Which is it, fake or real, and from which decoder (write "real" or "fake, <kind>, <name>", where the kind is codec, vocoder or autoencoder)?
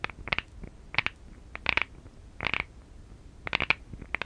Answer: real